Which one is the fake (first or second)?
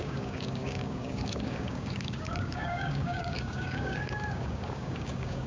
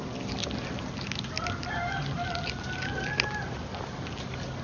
first